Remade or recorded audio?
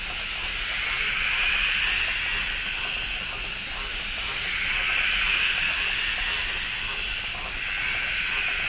recorded